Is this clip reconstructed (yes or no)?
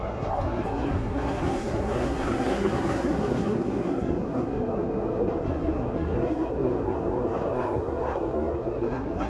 yes